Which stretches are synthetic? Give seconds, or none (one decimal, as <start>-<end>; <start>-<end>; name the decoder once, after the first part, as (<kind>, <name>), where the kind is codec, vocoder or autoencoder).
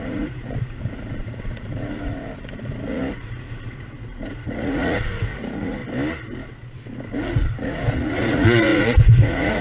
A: 0.0-5.8 (vocoder, Vocos); 7.1-9.6